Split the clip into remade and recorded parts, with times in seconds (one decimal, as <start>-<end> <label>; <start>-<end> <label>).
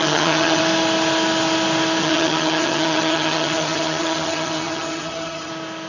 0.0-0.6 remade; 0.6-2.0 recorded; 2.0-5.5 remade; 5.5-5.9 recorded